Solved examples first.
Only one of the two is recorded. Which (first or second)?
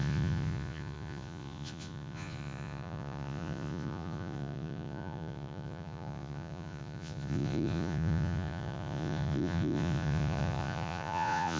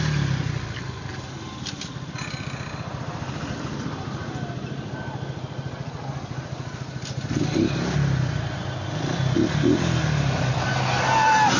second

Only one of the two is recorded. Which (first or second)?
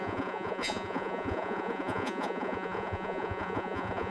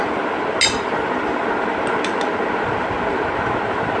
second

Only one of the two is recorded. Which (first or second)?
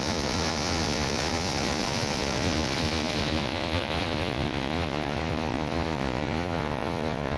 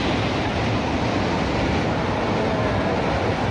second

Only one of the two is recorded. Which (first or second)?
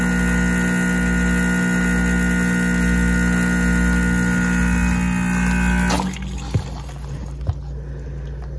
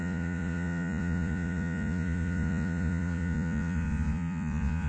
first